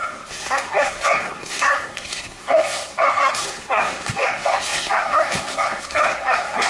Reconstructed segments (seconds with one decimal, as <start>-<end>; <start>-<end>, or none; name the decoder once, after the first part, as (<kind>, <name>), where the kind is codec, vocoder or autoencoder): 0.0-6.7 (codec, SNAC)